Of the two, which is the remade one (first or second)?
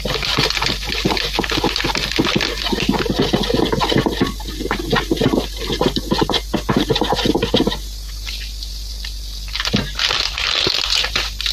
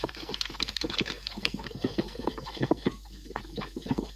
second